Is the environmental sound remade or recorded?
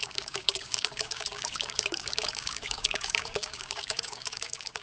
remade